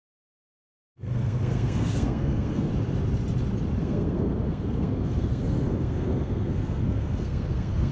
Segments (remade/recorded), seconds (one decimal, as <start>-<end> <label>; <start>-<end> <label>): 0.0-2.7 remade; 2.7-3.8 recorded; 3.8-7.9 remade